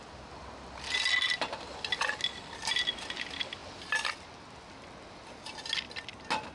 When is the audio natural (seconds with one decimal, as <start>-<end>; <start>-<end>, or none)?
0.0-6.5